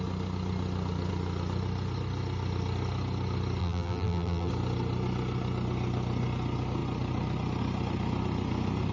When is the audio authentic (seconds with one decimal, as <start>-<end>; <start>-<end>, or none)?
0.0-3.6; 4.5-8.9